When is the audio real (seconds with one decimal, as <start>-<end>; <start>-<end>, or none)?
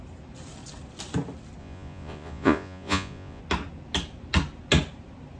0.0-1.6; 3.4-5.4